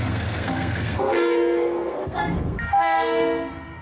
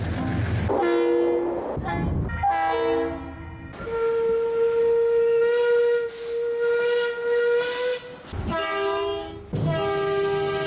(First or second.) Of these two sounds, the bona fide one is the second